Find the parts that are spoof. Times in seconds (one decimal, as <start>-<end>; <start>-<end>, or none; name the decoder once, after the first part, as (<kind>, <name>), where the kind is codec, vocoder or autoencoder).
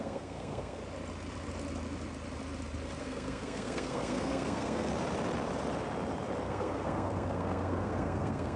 0.0-0.8 (codec, SNAC); 3.0-4.9; 6.4-8.6